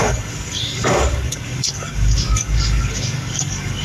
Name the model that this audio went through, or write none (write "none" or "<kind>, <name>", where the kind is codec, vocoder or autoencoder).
codec, DAC